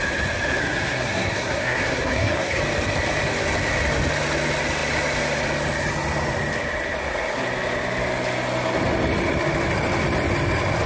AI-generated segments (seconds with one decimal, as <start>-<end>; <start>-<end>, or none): 0.6-2.6